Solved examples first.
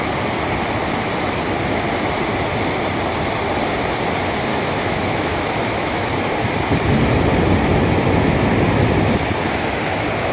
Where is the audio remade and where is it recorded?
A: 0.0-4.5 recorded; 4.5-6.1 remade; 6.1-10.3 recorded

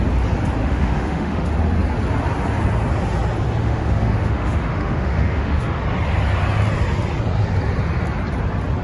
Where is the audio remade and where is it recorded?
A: 0.0-0.6 recorded; 0.6-1.5 remade; 1.5-3.6 recorded; 3.6-5.8 remade; 5.8-8.8 recorded

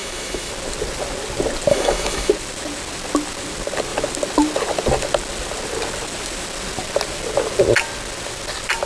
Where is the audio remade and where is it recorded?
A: 0.0-0.5 remade; 0.5-1.7 recorded; 1.7-2.3 remade; 2.3-8.9 recorded

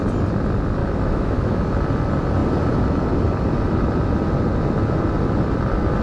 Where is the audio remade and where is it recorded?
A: 0.0-0.8 recorded; 0.8-1.6 remade; 1.6-6.0 recorded

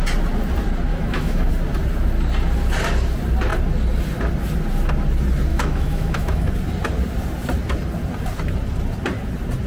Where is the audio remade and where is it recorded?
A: 0.0-0.9 recorded; 0.9-1.5 remade; 1.5-5.5 recorded; 5.5-6.5 remade; 6.5-9.7 recorded

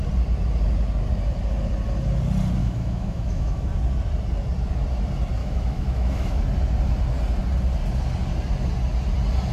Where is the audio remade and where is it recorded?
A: 0.0-2.6 recorded; 2.6-3.7 remade; 3.7-5.4 recorded; 5.4-6.4 remade; 6.4-9.5 recorded